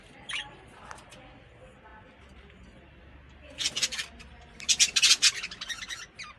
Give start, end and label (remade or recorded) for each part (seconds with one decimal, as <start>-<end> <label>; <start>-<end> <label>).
0.0-6.4 recorded

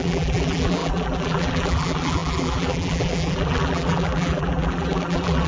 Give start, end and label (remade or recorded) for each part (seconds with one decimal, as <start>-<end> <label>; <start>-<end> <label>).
0.0-5.5 remade